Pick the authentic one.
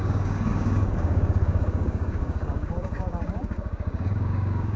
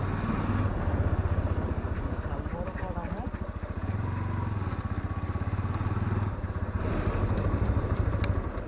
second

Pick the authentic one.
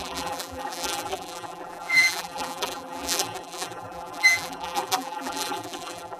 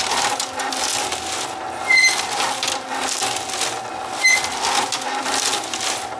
second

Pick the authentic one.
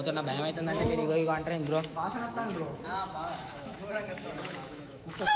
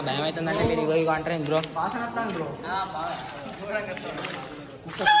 second